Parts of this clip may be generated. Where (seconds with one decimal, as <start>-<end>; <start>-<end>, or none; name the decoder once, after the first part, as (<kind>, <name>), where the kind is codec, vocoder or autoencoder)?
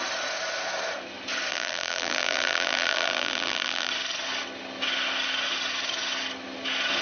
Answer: 1.5-3.9 (vocoder, BigVGAN v2)